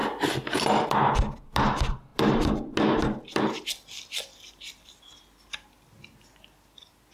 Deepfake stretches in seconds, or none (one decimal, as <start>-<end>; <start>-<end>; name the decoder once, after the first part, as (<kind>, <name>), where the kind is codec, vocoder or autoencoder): none